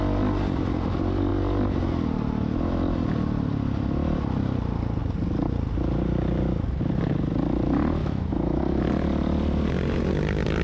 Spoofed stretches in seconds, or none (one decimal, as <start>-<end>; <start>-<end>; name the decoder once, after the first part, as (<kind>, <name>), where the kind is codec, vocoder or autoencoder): 8.0-8.6 (autoencoder, DAC-VAE)